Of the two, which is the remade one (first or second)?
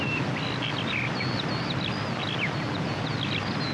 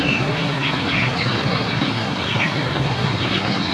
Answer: second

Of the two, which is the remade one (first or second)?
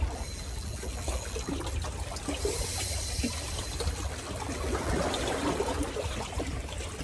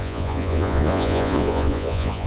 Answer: second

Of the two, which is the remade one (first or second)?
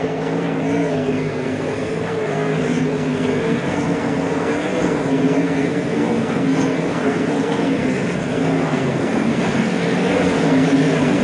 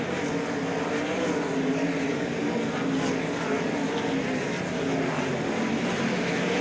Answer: first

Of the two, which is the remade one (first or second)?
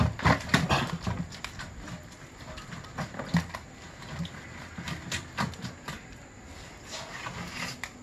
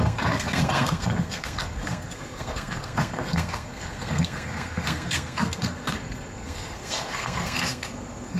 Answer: second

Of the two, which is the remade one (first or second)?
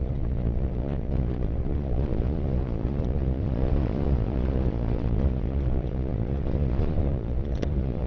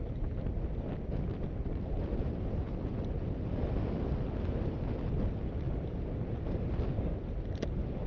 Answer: first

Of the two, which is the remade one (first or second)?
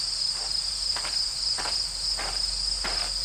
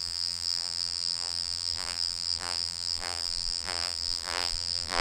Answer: second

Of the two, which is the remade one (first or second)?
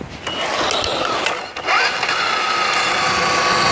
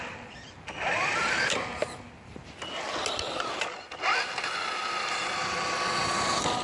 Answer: second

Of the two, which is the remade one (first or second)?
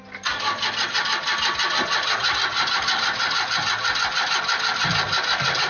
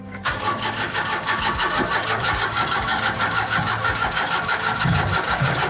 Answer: second